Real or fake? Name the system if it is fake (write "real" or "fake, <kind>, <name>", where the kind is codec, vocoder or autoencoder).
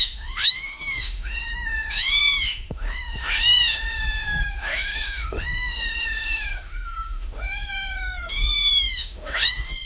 fake, autoencoder, DAC-VAE